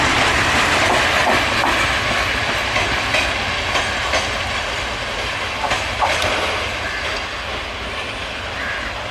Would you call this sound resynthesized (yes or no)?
no